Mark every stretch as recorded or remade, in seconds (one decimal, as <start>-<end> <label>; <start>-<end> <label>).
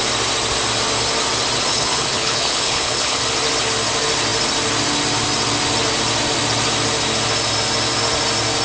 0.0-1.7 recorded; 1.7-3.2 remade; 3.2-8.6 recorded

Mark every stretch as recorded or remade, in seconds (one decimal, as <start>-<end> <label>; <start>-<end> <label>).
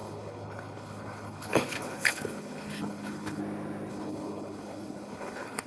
0.0-3.4 remade; 3.4-3.9 recorded; 3.9-5.7 remade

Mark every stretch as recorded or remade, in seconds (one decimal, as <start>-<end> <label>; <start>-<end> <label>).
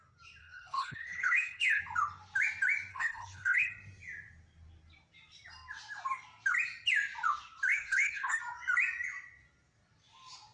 0.0-0.4 recorded; 0.4-1.8 remade; 1.8-2.9 recorded; 2.9-3.7 remade; 3.7-7.7 recorded; 7.7-8.4 remade; 8.4-10.5 recorded